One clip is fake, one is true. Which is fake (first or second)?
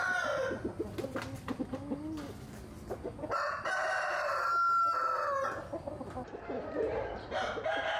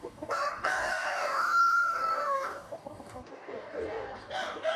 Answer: second